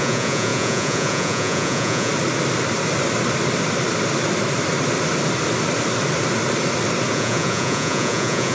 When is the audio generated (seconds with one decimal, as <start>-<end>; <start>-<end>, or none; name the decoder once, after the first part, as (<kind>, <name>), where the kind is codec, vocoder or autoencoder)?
0.0-2.1 (vocoder, Vocos); 7.1-8.5